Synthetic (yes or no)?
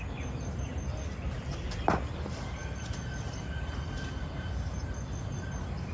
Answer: no